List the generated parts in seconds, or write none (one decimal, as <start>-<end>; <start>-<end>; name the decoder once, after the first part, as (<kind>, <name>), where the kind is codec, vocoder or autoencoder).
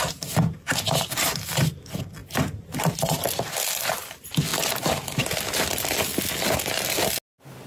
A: none